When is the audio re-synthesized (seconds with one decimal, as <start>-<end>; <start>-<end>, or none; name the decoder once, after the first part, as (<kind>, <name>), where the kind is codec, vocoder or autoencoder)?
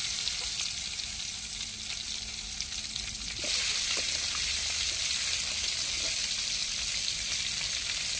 none